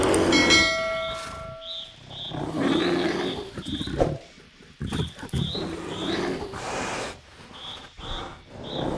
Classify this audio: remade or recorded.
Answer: recorded